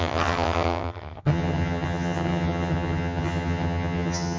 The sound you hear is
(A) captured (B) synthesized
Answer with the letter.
B